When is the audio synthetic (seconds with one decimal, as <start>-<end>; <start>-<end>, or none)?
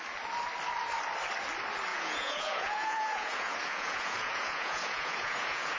1.9-5.8